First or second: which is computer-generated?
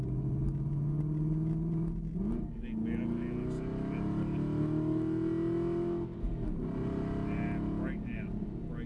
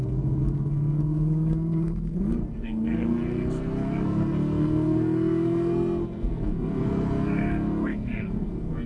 second